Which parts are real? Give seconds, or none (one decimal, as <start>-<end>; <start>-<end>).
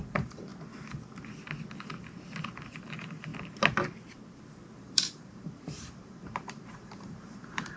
0.5-2.7; 3.3-4.8